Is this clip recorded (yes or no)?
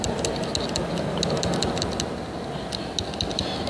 yes